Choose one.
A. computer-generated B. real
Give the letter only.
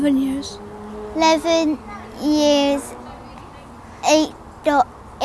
B